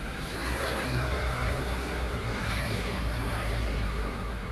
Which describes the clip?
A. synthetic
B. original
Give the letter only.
A